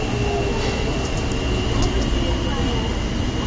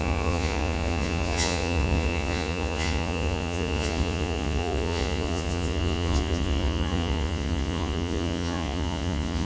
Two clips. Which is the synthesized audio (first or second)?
second